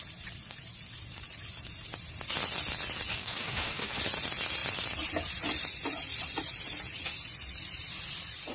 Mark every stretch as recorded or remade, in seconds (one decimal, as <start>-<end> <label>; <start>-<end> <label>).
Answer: 0.0-3.1 recorded; 3.1-4.0 remade; 4.0-8.5 recorded